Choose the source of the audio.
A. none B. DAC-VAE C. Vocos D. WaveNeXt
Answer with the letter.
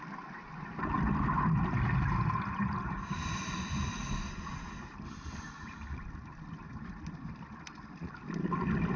A